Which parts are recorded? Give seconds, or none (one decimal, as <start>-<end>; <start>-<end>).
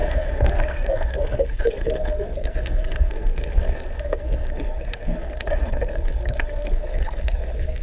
none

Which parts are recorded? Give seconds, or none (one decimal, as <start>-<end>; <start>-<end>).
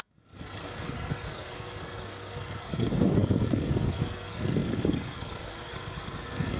none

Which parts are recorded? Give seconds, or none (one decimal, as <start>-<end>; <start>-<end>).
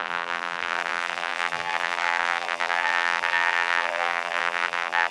none